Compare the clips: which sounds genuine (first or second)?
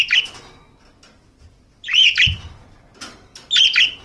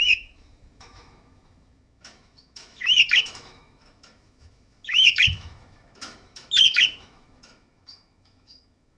first